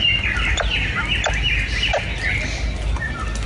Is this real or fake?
real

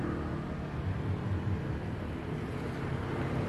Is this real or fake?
real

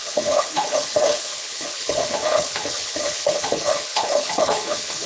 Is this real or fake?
fake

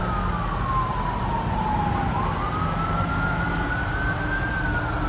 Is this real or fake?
real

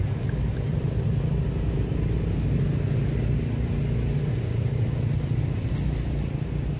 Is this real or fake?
real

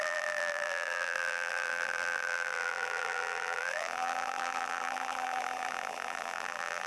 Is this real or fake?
fake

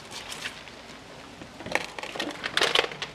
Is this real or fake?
real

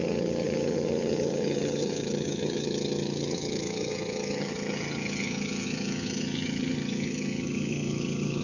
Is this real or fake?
fake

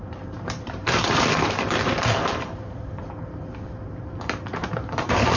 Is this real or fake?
fake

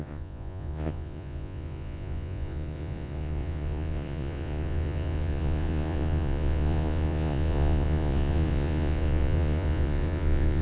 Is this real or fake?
fake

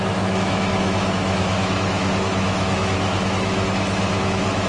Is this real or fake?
fake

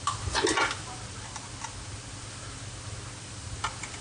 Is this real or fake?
real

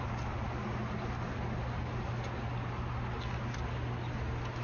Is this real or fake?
real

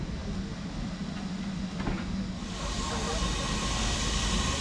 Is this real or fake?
real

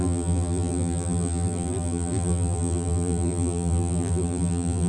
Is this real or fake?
fake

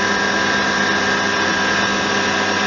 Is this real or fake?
real